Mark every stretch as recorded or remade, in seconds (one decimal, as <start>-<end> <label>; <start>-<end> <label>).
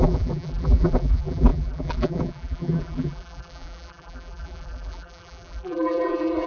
0.0-6.5 remade